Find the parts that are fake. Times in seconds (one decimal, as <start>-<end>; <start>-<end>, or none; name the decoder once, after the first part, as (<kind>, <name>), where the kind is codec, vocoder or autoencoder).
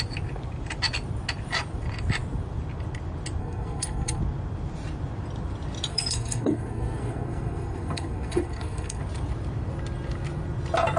3.4-4.2 (codec, SNAC); 5.9-9.0